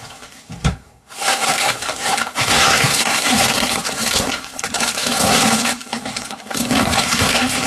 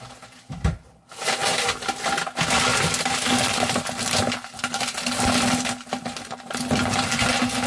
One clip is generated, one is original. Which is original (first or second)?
second